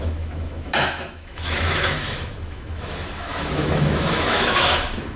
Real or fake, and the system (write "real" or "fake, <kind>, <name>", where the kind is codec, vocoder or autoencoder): fake, autoencoder, DAC-VAE